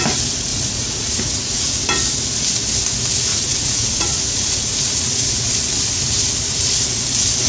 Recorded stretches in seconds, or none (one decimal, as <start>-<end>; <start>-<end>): 0.0-0.5; 1.8-3.3; 5.5-7.5